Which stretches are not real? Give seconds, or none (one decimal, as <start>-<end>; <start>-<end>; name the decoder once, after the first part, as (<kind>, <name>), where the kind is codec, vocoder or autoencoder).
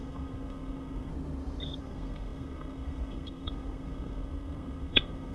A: 0.0-1.1 (codec, SNAC); 1.8-5.3